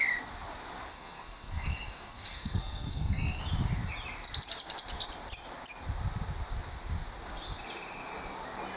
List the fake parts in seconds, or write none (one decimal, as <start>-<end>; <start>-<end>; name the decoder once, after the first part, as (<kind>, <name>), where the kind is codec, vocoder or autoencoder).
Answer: 0.9-3.4 (codec, SNAC)